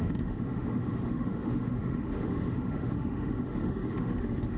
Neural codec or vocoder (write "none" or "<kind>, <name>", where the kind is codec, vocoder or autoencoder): autoencoder, DAC-VAE